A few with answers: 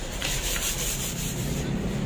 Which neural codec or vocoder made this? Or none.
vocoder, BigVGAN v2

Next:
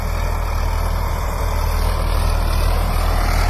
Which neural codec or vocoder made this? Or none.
vocoder, BigVGAN v2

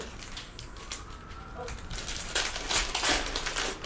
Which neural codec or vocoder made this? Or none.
none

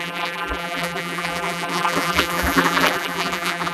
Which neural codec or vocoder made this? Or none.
vocoder, BigVGAN v2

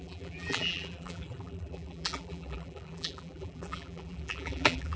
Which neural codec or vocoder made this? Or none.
vocoder, BigVGAN v2